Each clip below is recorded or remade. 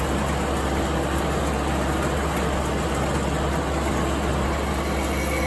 recorded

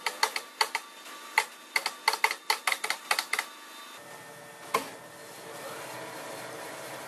recorded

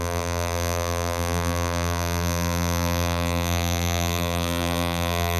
remade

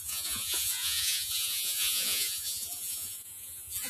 remade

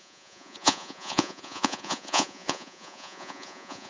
remade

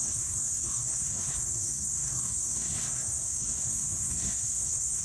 remade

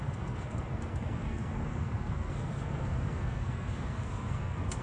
remade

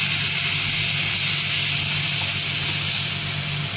recorded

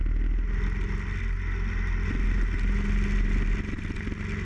recorded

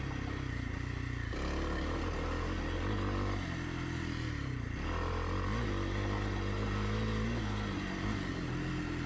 recorded